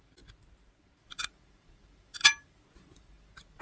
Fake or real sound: real